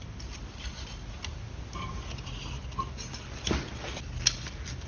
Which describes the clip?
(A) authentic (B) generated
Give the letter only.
A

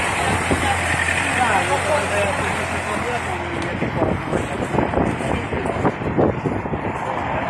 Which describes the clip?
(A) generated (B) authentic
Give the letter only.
B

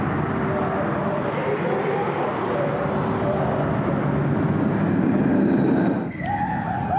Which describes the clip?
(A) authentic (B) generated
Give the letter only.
A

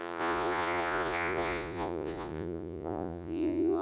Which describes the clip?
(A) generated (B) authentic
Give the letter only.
A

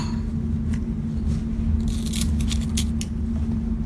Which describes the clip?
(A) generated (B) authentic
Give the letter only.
B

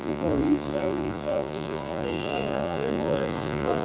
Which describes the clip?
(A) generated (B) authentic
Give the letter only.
A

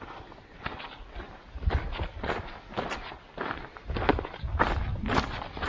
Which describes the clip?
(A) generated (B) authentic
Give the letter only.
B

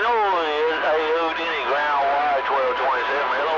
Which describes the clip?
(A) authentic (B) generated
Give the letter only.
A